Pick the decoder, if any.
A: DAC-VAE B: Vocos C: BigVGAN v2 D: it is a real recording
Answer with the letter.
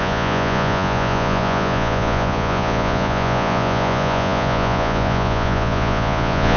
B